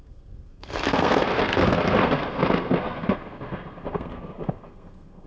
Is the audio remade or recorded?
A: remade